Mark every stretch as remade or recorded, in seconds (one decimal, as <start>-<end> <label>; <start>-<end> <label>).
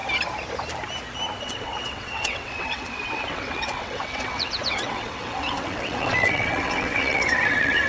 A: 0.0-1.4 recorded; 1.4-7.9 remade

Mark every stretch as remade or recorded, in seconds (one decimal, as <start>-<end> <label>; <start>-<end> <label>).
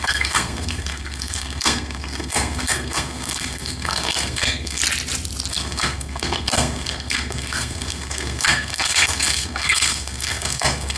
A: 0.0-4.8 remade; 4.8-5.5 recorded; 5.5-11.0 remade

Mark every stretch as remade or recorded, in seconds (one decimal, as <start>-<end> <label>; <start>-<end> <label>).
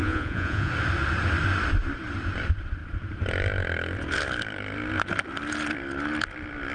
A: 0.0-0.7 remade; 0.7-6.7 recorded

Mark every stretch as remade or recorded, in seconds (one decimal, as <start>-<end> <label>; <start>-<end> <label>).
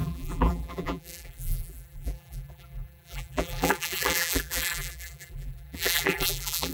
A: 0.0-6.7 remade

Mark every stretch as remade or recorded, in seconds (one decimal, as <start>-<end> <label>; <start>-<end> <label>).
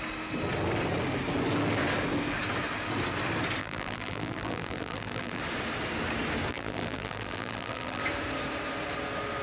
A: 0.0-3.6 recorded; 3.6-5.4 remade; 5.4-6.5 recorded; 6.5-8.0 remade; 8.0-9.4 recorded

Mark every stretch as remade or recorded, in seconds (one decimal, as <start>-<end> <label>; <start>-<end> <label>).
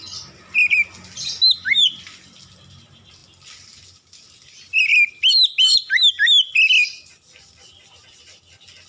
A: 0.0-8.9 recorded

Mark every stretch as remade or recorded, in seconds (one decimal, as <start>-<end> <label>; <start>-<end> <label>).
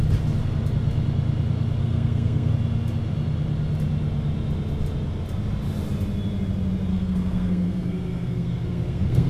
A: 0.0-1.8 recorded; 1.8-2.5 remade; 2.5-6.9 recorded; 6.9-9.3 remade